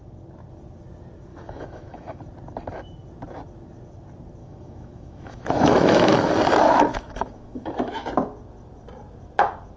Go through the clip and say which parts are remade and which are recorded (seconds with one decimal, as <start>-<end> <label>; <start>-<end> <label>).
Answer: 0.0-1.3 recorded; 1.3-2.2 remade; 2.2-4.4 recorded; 4.4-6.3 remade; 6.3-6.9 recorded; 6.9-8.1 remade; 8.1-9.8 recorded